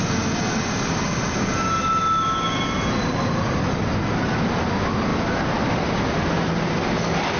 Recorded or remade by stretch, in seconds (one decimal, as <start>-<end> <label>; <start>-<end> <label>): 0.0-7.4 recorded